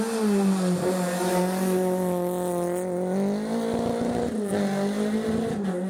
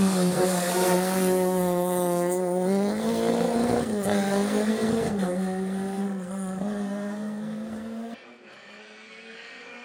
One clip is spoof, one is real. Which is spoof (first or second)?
second